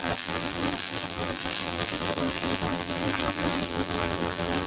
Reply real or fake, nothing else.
fake